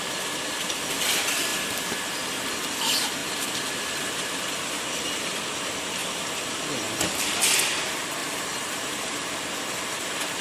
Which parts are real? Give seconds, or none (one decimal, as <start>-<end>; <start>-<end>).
0.0-3.2; 4.3-8.2; 9.4-10.4